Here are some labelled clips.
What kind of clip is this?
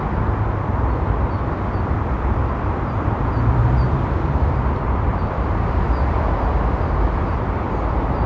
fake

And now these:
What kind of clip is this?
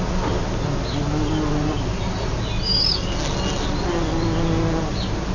real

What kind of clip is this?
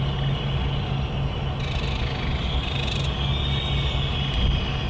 real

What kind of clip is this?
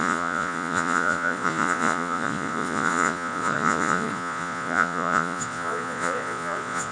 fake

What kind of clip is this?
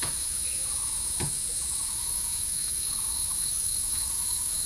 fake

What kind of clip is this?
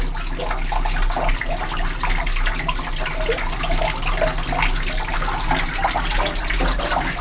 real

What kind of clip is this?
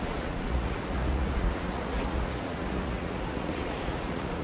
fake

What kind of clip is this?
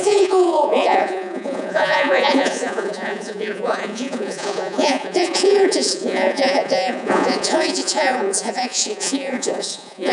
fake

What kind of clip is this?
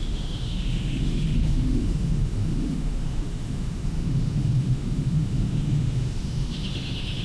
fake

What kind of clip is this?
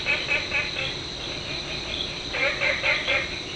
real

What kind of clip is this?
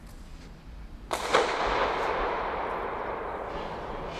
real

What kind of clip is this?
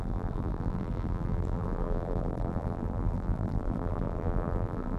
fake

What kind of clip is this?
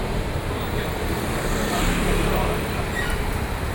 fake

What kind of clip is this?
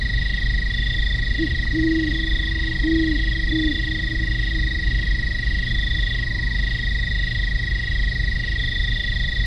real